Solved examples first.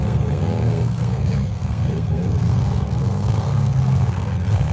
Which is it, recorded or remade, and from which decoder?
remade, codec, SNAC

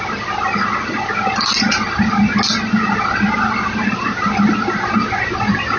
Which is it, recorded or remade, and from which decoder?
recorded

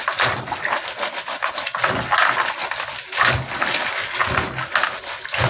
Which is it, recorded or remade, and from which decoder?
recorded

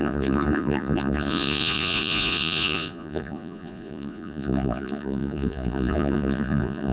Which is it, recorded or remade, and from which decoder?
remade, vocoder, Vocos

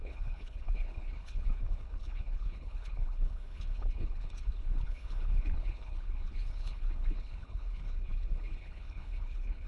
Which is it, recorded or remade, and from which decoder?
remade, codec, HILCodec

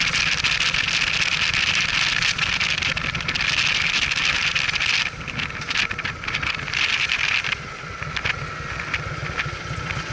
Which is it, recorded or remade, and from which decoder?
recorded